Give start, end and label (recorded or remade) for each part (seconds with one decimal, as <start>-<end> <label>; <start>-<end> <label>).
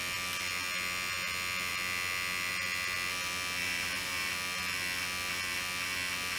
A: 0.0-3.6 recorded; 3.6-4.3 remade; 4.3-6.4 recorded